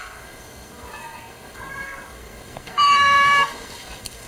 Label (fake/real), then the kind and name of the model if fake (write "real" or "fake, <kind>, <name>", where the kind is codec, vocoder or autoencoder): fake, codec, SNAC